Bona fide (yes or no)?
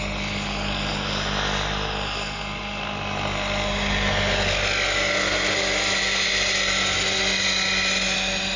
yes